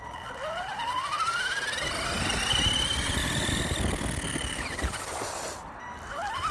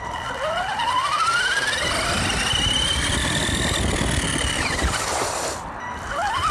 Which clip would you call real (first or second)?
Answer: first